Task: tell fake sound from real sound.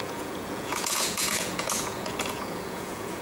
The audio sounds fake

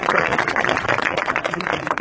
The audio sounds fake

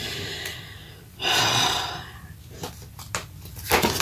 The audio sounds real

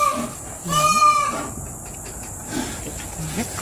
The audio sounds real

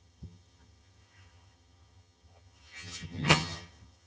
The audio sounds fake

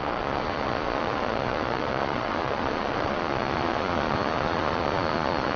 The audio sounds fake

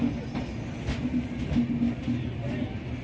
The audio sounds real